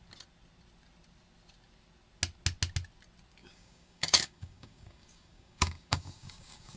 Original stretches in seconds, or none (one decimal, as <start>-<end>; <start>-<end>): 0.0-3.4